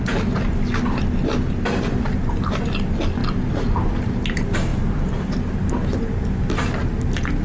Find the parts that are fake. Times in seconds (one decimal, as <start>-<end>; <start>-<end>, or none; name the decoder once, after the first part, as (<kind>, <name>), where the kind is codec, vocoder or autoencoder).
none